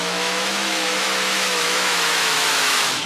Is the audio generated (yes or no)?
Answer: yes